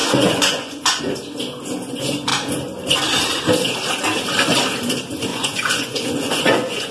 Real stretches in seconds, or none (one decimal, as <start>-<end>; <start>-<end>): 1.0-5.3